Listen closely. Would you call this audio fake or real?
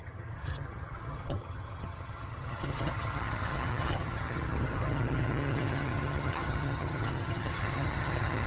fake